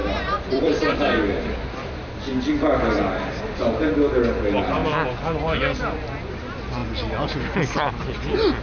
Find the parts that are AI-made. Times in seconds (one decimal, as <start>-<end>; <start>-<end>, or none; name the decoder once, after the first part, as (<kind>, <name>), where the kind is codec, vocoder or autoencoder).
0.0-1.6 (vocoder, BigVGAN v2)